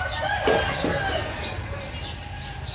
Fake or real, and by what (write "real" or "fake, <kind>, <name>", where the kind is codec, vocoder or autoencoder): real